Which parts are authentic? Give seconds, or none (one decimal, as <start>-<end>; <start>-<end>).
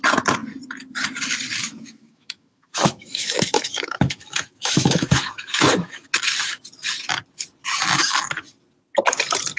0.0-1.6; 6.1-9.6